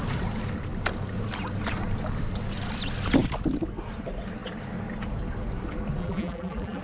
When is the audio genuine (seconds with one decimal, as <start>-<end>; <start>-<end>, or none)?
0.0-6.0